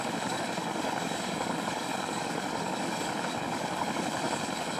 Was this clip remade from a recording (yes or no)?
yes